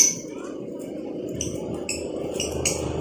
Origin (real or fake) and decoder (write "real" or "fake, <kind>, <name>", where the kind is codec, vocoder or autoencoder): real